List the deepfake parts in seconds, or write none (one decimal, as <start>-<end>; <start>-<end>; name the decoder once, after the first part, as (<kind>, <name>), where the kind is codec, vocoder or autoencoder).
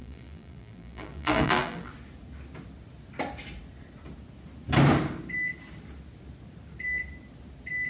0.0-1.9 (vocoder, BigVGAN v2)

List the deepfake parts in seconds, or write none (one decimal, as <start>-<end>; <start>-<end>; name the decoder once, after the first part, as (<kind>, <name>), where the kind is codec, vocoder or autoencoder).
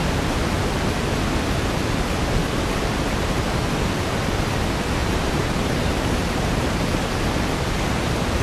2.4-3.6 (vocoder, BigVGAN v2); 5.0-5.8; 6.2-7.2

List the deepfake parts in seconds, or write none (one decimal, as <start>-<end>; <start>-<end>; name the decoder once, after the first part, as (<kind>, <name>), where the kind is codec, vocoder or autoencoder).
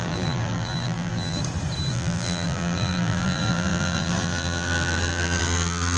0.0-1.4 (vocoder, BigVGAN v2); 1.9-6.0